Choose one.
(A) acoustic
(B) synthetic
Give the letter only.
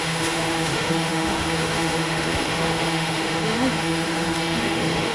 B